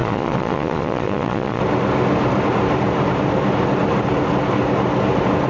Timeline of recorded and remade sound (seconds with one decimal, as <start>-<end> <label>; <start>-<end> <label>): 0.0-1.6 remade; 1.6-5.5 recorded